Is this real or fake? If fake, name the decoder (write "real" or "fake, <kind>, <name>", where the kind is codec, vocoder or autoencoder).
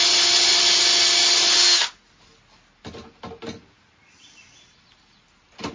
real